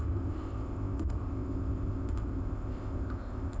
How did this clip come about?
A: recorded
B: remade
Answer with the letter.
B